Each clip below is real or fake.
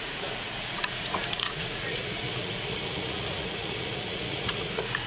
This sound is fake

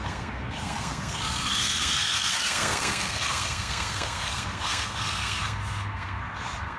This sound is fake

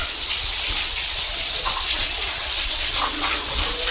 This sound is fake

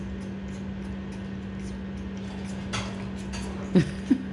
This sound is real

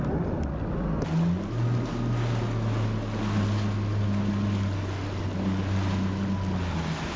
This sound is real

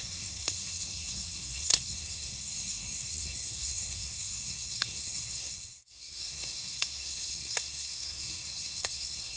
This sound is fake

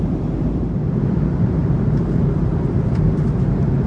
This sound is fake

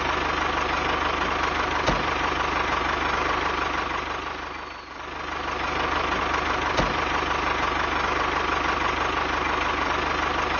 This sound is real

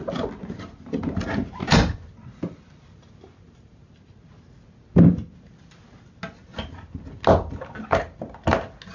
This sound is real